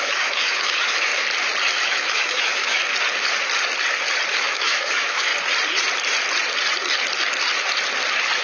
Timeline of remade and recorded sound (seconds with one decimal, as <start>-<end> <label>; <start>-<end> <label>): 0.0-1.1 remade; 1.1-1.8 recorded; 1.8-2.8 remade; 2.8-4.3 recorded; 4.3-5.3 remade; 5.3-8.4 recorded